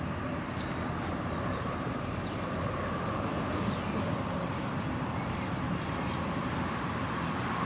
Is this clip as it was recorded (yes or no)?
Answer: yes